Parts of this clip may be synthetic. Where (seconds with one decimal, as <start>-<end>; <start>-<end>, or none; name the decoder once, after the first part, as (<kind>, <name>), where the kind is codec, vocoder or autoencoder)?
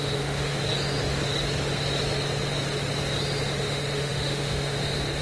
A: 0.0-0.5 (autoencoder, DAC-VAE); 3.6-5.2